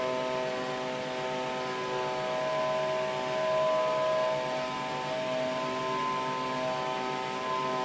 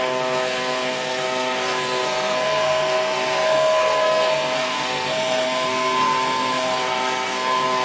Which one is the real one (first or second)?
first